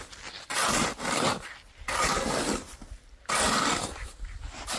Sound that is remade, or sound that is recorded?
recorded